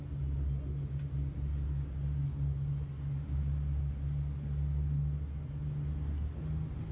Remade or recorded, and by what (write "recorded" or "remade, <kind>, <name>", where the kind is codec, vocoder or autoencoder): recorded